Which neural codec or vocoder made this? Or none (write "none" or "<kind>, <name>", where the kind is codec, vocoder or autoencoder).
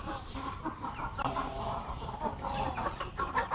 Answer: vocoder, BigVGAN v2